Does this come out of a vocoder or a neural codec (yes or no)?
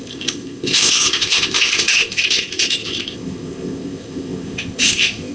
yes